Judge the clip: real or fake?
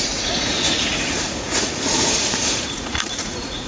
fake